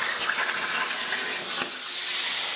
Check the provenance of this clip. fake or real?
real